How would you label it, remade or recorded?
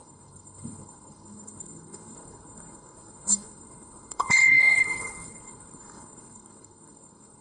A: remade